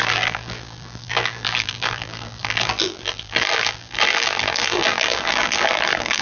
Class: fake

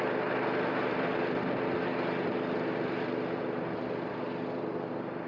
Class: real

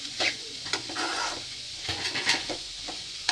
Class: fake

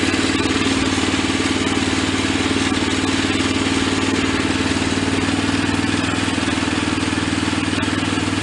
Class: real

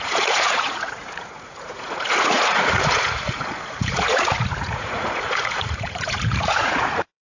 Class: fake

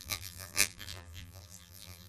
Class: fake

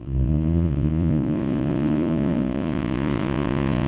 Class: fake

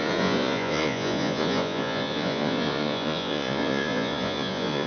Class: fake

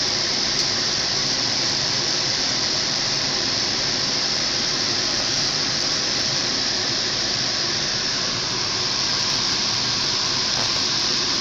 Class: fake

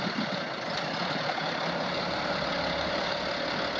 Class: real